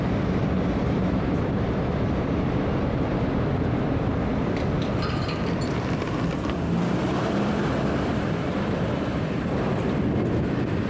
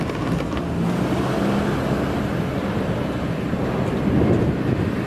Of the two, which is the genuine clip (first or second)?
second